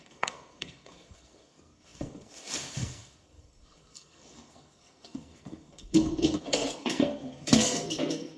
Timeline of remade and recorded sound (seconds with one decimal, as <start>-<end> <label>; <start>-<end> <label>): 0.0-8.4 remade